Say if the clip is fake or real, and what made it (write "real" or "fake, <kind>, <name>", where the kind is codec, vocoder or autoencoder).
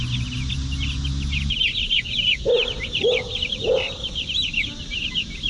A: real